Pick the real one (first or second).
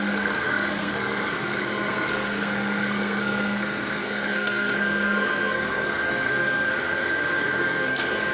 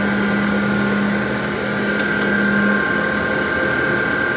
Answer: second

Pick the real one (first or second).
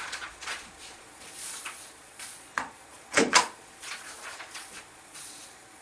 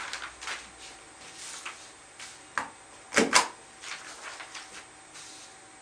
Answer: second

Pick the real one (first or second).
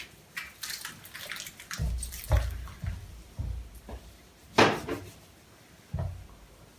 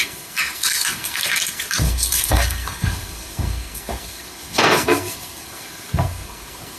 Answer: first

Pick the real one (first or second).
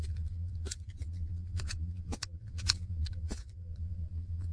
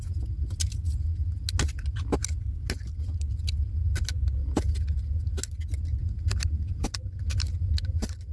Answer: second